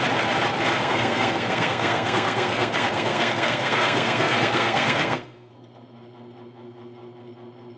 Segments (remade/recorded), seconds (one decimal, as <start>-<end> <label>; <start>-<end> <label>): 0.0-0.8 recorded; 0.8-5.5 remade; 5.5-7.8 recorded